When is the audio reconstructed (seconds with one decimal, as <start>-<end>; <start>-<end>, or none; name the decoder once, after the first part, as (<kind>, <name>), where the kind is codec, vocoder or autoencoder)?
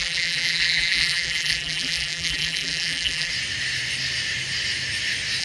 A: 0.0-3.3 (vocoder, BigVGAN v2)